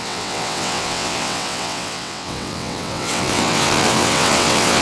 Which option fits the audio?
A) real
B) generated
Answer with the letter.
B